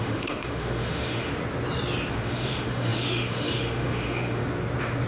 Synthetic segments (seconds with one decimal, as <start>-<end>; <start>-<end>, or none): 0.0-1.3; 2.1-4.4